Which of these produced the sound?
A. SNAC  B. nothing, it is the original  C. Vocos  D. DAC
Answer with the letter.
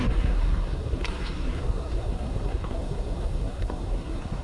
A